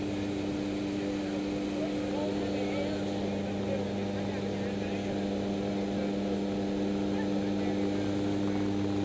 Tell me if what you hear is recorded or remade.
recorded